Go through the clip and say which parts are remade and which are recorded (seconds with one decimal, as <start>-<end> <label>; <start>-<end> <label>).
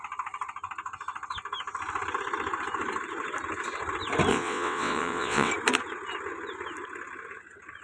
0.0-4.3 recorded; 4.3-5.5 remade; 5.5-7.8 recorded